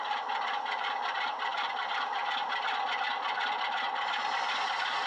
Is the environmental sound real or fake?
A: real